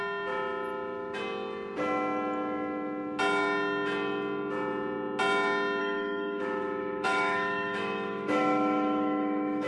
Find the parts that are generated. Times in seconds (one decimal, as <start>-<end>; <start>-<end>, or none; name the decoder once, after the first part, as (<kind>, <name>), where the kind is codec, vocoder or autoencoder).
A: 5.8-9.7 (autoencoder, DAC-VAE)